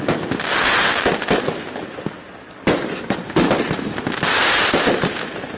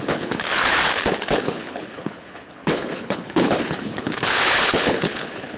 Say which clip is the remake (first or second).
second